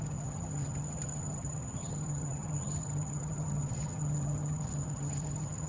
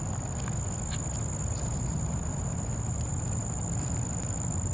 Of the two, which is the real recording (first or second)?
second